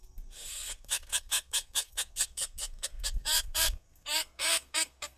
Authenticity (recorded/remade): remade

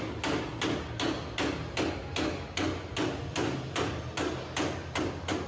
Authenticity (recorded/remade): recorded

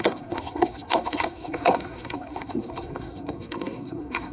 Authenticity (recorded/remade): remade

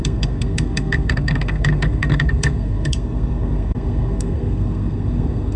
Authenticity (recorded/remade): remade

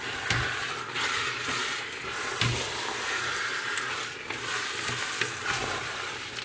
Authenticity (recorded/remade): recorded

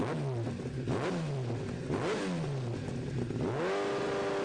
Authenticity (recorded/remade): recorded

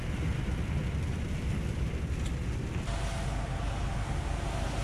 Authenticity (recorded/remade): recorded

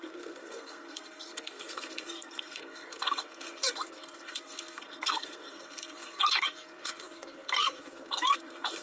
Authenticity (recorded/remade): remade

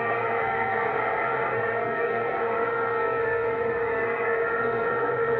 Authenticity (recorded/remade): remade